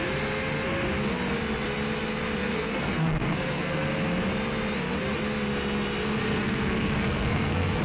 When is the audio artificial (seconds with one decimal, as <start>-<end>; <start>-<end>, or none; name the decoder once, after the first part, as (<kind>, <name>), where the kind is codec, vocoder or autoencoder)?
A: 2.4-3.9 (codec, SNAC); 6.2-7.8